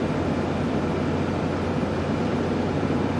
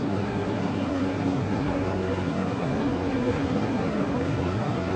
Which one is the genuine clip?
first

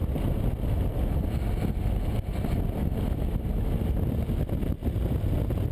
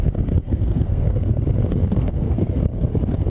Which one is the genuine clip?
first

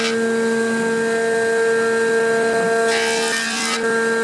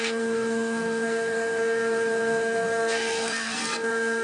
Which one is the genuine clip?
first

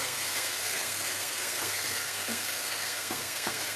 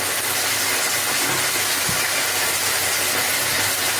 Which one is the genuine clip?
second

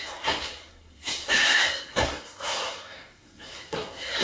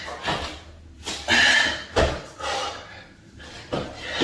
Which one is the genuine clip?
second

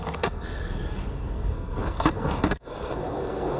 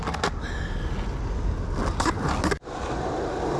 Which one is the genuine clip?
second